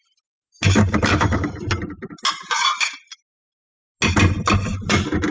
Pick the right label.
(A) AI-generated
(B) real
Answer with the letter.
B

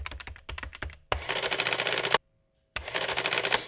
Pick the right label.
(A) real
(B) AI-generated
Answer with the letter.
A